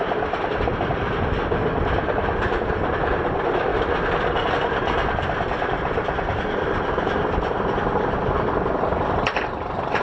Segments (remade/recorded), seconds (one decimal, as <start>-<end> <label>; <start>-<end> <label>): 0.0-0.7 remade; 0.7-2.9 recorded; 2.9-3.7 remade; 3.7-4.5 recorded; 4.5-5.0 remade; 5.0-6.6 recorded; 6.6-10.0 remade